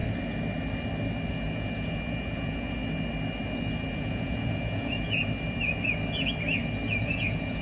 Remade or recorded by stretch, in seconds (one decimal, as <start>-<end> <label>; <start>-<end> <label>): 0.0-1.3 recorded; 1.3-2.8 remade; 2.8-3.9 recorded; 3.9-5.2 remade; 5.2-7.0 recorded; 7.0-7.6 remade